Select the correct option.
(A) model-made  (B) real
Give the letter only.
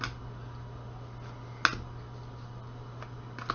B